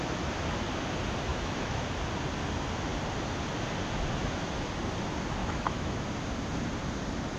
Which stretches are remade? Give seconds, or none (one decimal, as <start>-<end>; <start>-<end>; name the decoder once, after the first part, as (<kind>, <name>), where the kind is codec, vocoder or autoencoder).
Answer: 1.3-1.8 (autoencoder, DAC-VAE); 5.4-5.9